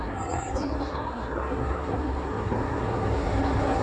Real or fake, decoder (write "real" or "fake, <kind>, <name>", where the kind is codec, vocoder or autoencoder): fake, codec, SNAC